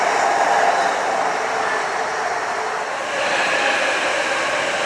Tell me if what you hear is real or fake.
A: real